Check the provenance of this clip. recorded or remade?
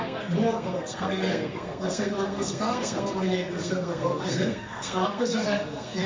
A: remade